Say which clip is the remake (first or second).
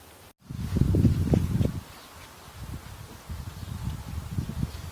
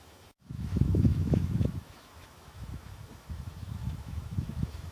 second